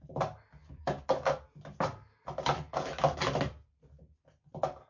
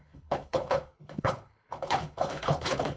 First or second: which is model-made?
second